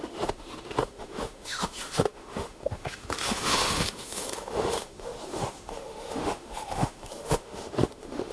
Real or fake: fake